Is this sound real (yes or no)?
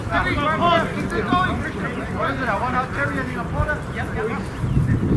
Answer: yes